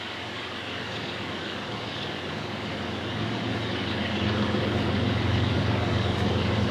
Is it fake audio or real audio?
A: fake